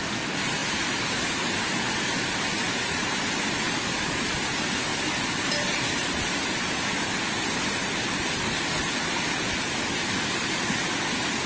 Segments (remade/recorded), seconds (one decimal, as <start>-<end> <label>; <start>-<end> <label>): 0.0-11.5 recorded